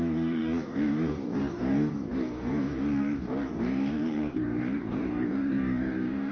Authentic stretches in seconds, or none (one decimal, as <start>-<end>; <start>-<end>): none